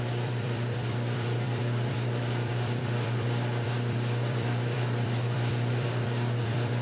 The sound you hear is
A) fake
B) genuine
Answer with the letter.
A